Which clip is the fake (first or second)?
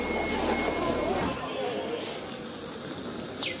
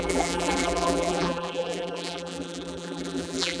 second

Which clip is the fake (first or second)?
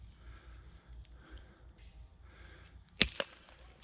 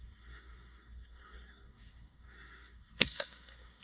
second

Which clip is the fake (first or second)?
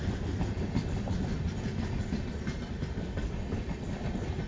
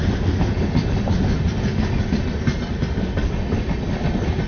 first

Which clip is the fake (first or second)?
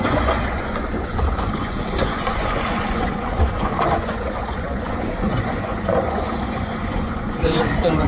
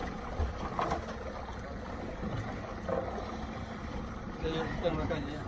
first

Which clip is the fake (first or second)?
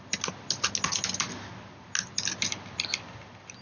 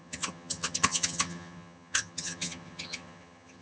second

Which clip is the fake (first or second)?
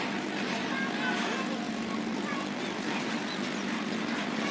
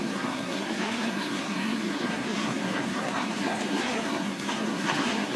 second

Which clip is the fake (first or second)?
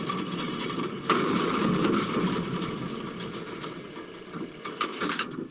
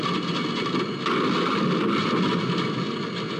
first